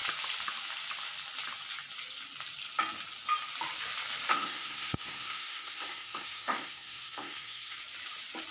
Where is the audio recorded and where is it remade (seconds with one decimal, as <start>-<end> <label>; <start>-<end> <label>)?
0.0-4.3 recorded; 4.3-7.8 remade; 7.8-8.5 recorded